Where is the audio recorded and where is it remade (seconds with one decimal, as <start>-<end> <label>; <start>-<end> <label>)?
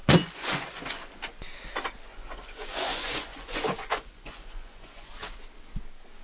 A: 0.0-1.0 remade; 1.0-2.1 recorded; 2.1-5.1 remade; 5.1-6.2 recorded